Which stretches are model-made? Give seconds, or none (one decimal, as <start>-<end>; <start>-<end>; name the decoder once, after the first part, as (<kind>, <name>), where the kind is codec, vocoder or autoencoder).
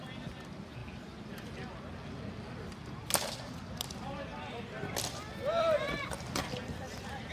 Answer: none